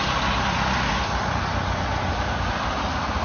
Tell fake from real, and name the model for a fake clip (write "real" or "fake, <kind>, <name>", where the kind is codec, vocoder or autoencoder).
real